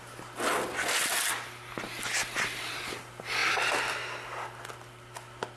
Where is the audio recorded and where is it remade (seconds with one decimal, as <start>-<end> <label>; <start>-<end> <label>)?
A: 0.0-5.6 recorded